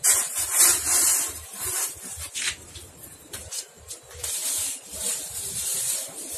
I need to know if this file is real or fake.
fake